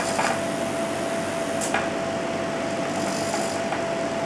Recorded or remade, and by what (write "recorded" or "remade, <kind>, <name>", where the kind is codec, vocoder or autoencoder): recorded